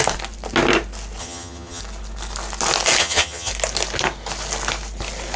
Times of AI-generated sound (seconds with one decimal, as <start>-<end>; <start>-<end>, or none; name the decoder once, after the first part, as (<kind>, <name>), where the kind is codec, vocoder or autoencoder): 1.2-1.8 (vocoder, HiFi-GAN); 3.0-3.5